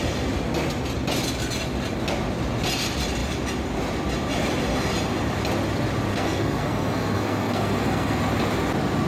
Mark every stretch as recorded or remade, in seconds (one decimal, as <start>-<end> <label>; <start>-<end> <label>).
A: 0.0-6.1 recorded; 6.1-8.2 remade; 8.2-9.1 recorded